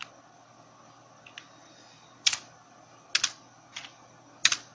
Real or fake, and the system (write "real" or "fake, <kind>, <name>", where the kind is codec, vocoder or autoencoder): real